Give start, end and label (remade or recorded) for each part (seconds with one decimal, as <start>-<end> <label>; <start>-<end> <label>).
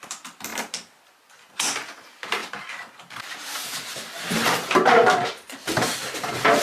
0.0-0.5 remade; 0.5-1.5 recorded; 1.5-6.6 remade